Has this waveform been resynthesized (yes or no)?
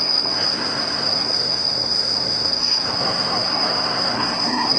yes